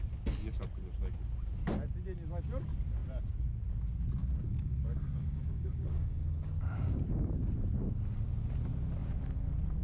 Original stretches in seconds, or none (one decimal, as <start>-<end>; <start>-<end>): 0.0-4.2; 7.3-9.8